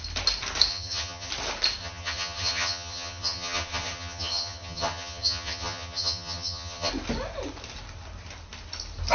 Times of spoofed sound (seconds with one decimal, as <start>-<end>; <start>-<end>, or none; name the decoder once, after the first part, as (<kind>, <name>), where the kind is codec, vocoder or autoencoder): 0.7-1.3 (vocoder, HiFi-GAN); 1.8-6.9